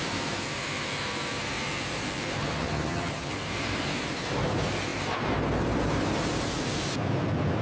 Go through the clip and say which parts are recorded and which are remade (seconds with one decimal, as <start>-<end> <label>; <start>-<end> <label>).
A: 0.0-2.4 recorded; 2.4-3.3 remade; 3.3-7.6 recorded